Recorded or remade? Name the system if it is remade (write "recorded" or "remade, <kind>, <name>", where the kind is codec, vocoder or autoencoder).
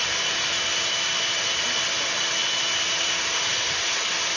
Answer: recorded